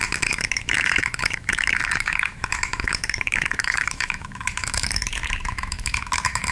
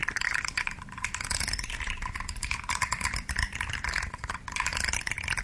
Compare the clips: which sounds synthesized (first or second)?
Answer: first